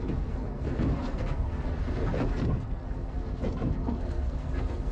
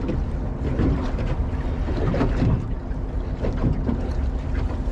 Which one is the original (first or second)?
second